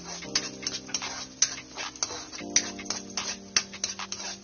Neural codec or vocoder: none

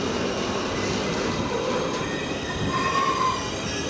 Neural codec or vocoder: none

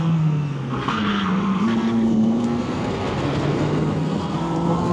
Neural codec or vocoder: codec, SNAC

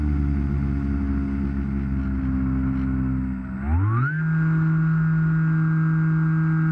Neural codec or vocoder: none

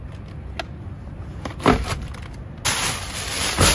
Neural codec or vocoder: none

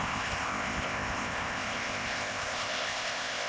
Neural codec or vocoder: codec, ZipCodec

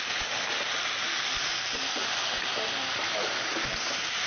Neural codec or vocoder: none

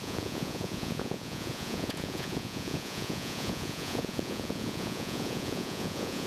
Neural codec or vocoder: vocoder, Vocos